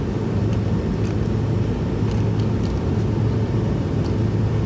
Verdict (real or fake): real